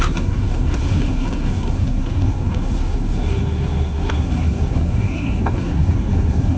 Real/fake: fake